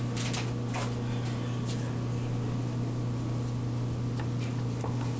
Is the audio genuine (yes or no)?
yes